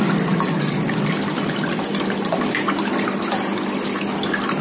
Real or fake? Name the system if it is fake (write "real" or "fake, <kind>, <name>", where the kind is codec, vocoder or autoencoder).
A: real